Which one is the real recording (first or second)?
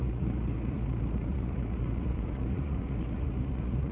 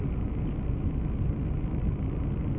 second